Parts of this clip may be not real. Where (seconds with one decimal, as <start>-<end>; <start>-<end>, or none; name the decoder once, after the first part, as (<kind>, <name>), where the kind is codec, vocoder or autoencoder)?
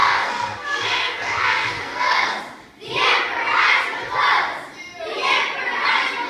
0.0-2.4 (codec, SNAC)